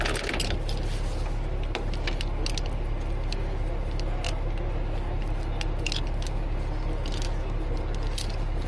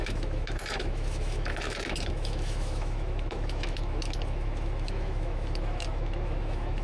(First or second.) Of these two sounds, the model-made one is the second